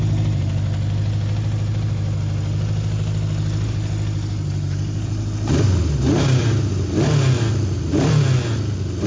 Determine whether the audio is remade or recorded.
recorded